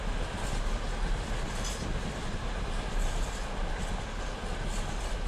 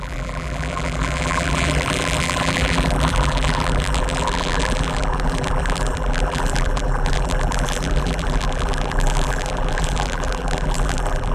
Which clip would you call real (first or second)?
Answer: first